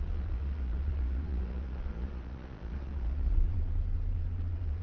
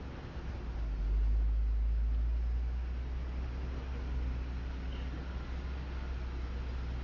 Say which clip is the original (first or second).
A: second